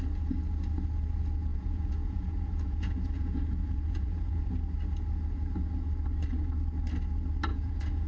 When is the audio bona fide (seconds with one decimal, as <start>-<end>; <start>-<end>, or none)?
0.0-1.5; 4.5-7.5